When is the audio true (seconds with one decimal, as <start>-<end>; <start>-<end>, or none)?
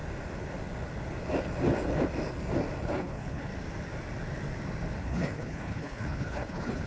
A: 0.0-2.8; 3.5-5.0